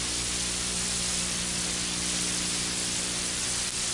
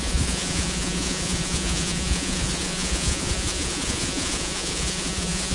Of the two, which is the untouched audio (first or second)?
first